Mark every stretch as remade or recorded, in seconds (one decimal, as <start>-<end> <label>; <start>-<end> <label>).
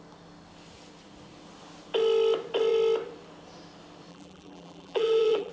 0.0-4.1 recorded; 4.1-5.5 remade